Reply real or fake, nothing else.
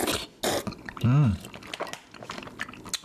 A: real